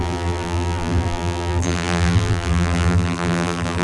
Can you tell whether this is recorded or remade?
remade